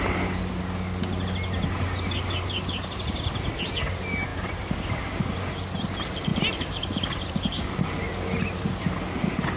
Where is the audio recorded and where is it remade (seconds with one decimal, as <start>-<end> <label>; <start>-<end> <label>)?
0.0-9.6 recorded